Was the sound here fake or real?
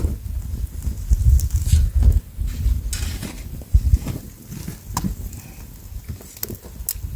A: real